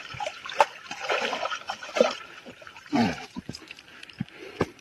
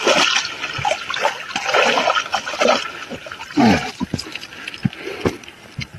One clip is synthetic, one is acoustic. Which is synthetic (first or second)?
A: first